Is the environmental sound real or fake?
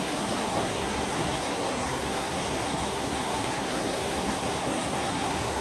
fake